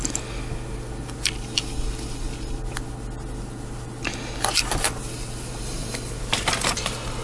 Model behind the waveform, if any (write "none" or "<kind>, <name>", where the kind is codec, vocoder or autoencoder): none